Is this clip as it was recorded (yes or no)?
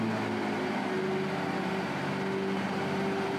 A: yes